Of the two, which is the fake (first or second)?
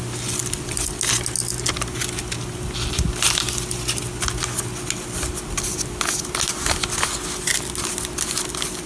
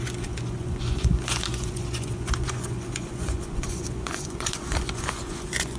second